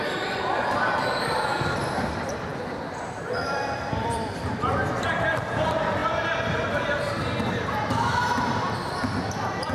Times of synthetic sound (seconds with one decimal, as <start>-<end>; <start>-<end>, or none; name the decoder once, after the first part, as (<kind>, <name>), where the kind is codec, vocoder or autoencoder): 0.0-6.0 (vocoder, BigVGAN v2); 8.4-9.7